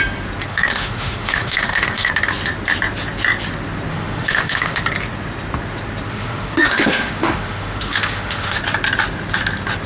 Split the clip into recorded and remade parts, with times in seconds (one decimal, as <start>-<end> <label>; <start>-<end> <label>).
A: 0.0-0.5 recorded; 0.5-2.1 remade; 2.1-3.9 recorded; 3.9-4.8 remade; 4.8-6.1 recorded; 6.1-8.6 remade; 8.6-9.9 recorded